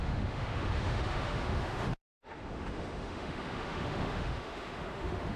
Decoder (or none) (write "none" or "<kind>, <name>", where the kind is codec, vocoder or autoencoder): autoencoder, DAC-VAE